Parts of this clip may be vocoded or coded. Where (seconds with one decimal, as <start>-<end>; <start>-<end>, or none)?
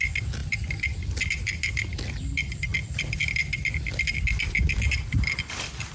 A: none